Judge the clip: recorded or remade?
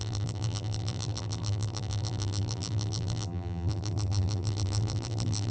remade